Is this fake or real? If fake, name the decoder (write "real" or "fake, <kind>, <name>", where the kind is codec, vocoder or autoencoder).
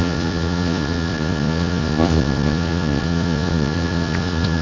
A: fake, vocoder, Vocos